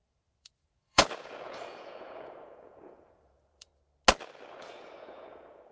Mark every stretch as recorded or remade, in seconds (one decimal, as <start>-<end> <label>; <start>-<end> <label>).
0.0-3.7 remade; 3.7-4.5 recorded; 4.5-5.7 remade